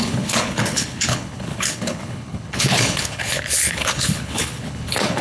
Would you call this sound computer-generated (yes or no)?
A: yes